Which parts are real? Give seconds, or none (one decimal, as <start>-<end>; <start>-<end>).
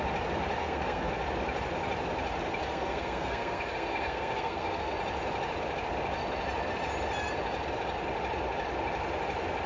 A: 0.0-0.6; 1.1-2.6; 4.9-9.7